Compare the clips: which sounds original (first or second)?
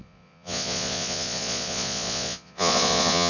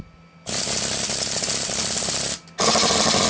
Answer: second